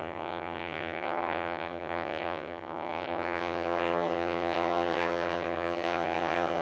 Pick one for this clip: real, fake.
fake